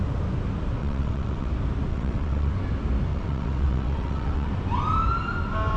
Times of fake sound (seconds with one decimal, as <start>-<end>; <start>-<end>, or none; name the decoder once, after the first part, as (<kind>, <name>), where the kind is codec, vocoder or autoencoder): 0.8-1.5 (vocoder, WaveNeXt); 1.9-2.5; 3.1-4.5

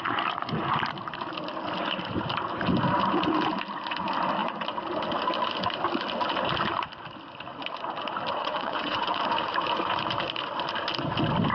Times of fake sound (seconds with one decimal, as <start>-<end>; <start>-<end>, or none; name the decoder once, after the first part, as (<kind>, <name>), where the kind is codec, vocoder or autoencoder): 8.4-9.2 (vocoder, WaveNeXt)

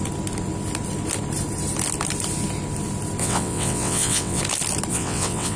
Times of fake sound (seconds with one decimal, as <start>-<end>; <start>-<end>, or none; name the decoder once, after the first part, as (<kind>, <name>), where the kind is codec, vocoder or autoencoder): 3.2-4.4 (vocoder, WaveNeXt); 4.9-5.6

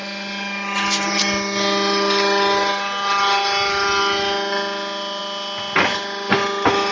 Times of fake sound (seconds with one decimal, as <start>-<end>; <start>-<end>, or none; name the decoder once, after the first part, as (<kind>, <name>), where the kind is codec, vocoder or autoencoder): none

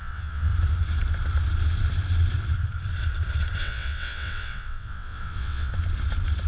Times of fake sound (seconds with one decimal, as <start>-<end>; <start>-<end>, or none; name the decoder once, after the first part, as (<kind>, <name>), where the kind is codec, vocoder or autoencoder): 0.0-0.5 (vocoder, WaveNeXt); 3.6-5.7